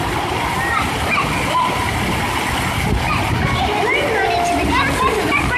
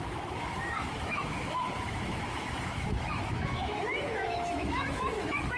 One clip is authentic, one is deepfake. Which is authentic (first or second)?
first